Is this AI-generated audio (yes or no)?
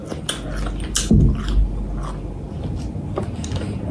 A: no